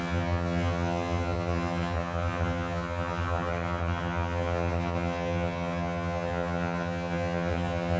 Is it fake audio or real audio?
fake